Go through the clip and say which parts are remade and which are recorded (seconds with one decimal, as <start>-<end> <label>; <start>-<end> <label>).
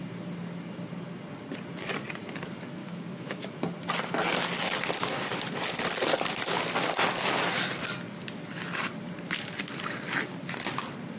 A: 0.0-2.8 recorded; 2.8-3.5 remade; 3.5-11.2 recorded